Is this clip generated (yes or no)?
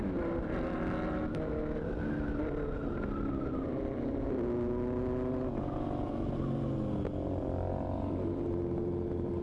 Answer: no